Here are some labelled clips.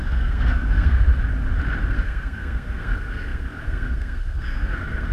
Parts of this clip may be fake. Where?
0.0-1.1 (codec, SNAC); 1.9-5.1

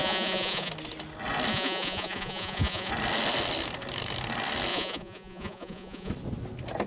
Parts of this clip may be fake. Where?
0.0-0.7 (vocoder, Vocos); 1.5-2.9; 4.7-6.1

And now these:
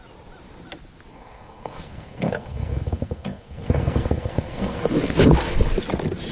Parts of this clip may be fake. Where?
1.1-4.9 (codec, SNAC)